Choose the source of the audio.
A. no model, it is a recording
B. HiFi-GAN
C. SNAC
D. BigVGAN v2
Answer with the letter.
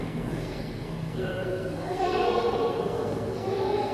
C